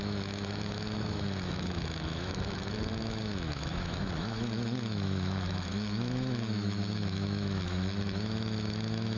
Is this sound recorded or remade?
remade